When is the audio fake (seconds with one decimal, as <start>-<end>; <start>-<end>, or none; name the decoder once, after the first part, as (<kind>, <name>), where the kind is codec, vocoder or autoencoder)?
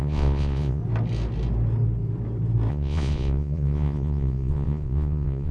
0.0-0.8 (vocoder, Vocos); 2.7-5.5